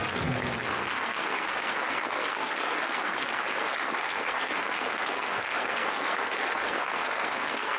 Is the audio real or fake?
fake